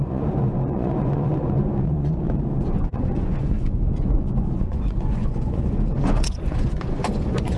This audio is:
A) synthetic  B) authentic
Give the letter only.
A